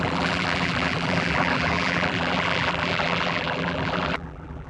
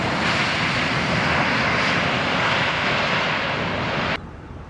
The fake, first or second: first